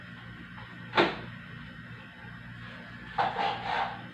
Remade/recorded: recorded